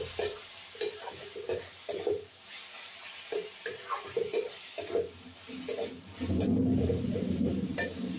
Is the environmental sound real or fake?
real